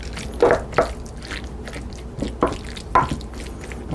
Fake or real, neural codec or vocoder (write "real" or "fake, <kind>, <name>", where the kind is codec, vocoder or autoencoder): real